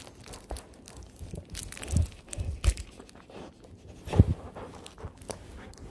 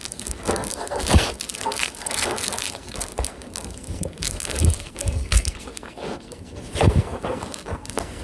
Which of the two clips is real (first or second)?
first